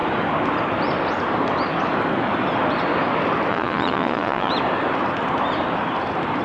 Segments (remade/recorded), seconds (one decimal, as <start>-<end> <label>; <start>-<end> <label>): 0.0-3.5 recorded; 3.5-4.5 remade; 4.5-6.4 recorded